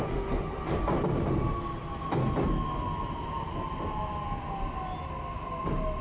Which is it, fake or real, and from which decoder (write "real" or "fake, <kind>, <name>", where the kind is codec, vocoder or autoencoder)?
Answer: real